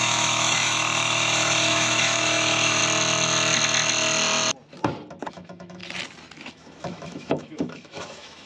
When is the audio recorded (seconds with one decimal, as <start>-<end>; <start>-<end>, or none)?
2.8-5.3; 5.8-6.5